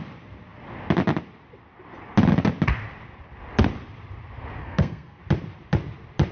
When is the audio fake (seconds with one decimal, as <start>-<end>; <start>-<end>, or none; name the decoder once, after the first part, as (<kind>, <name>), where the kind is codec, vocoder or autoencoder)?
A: 4.6-5.2 (codec, SNAC)